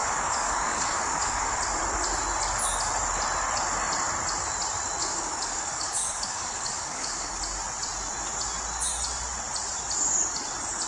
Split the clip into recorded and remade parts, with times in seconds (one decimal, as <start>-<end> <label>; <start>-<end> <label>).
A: 0.0-1.6 remade; 1.6-5.0 recorded; 5.0-7.4 remade; 7.4-10.9 recorded